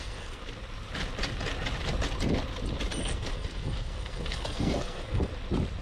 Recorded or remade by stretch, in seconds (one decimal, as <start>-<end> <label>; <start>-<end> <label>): 0.0-0.4 remade; 0.4-3.0 recorded; 3.0-5.3 remade; 5.3-5.8 recorded